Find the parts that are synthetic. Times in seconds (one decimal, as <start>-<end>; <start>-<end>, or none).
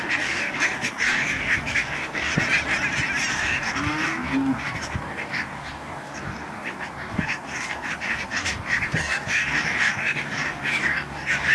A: 0.0-2.3; 3.3-11.5